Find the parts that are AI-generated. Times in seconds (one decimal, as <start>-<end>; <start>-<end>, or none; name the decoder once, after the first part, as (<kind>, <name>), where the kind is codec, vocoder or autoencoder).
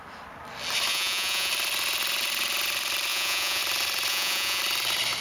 0.9-1.5 (vocoder, Vocos); 3.1-3.6; 4.1-4.6